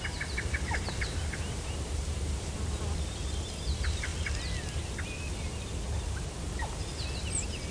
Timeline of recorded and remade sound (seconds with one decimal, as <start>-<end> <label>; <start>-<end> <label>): 0.0-4.1 remade; 4.1-7.7 recorded